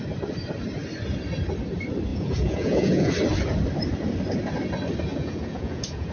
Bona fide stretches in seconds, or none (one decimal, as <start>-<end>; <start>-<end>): 0.0-2.1; 3.1-5.1